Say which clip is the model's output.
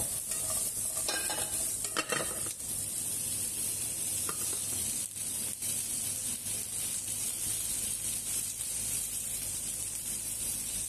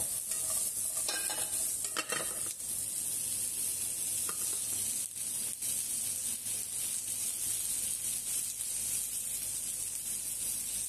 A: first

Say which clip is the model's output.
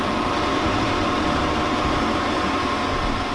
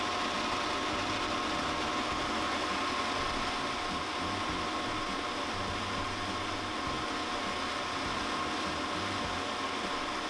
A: first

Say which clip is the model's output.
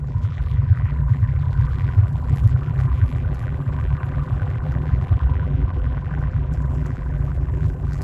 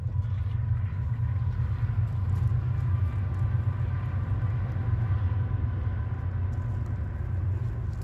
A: first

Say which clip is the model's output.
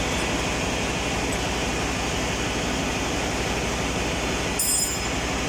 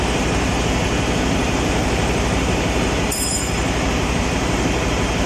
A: second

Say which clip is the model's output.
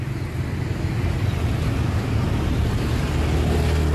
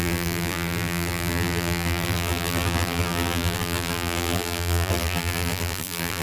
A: second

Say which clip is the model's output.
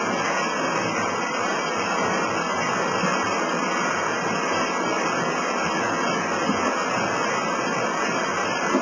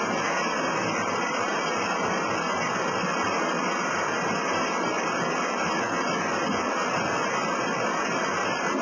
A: second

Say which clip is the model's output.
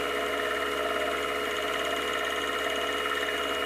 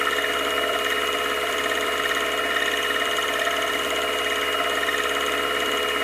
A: second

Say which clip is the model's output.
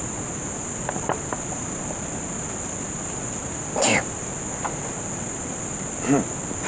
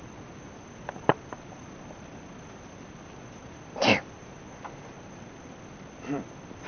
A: second